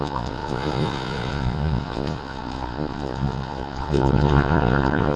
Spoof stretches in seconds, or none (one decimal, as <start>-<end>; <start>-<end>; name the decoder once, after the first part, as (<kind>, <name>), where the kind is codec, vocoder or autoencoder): 0.0-5.2 (vocoder, Vocos)